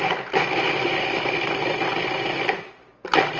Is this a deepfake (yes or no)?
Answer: no